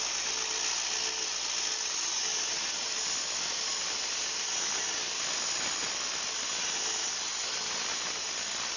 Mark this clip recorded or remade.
recorded